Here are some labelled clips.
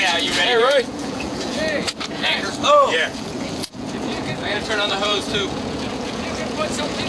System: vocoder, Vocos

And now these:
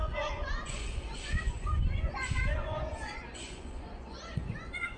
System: vocoder, Vocos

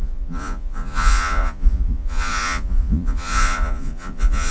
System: vocoder, Vocos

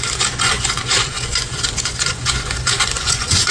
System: vocoder, Vocos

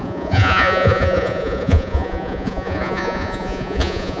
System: vocoder, Vocos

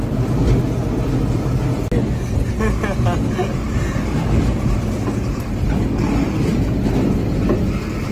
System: none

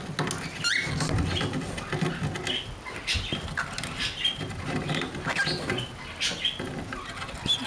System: none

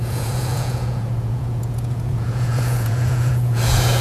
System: vocoder, Vocos